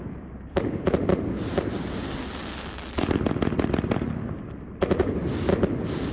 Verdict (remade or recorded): recorded